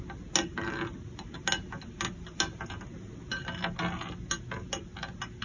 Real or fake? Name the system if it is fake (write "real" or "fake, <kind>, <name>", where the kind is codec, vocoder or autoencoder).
real